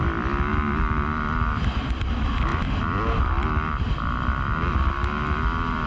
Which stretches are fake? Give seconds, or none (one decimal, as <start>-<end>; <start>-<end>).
none